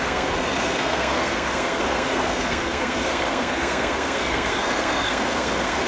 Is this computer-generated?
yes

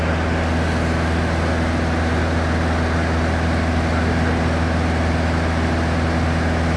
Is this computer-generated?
no